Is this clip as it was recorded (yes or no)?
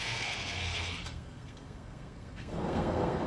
no